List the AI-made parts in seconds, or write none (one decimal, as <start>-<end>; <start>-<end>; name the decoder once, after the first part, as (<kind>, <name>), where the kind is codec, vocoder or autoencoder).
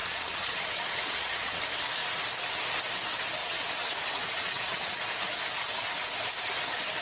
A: 0.0-1.6 (vocoder, Vocos); 3.4-5.0